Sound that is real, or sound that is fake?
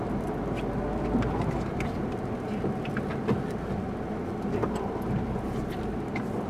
real